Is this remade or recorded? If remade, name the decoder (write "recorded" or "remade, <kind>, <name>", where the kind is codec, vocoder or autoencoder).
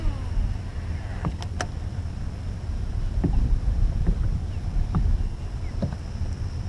recorded